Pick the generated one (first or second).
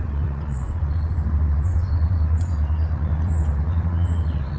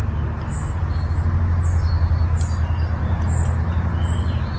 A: first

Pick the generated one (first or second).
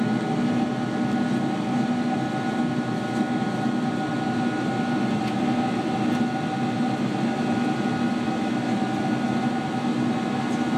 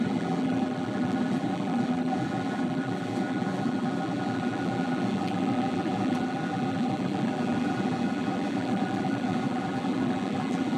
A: second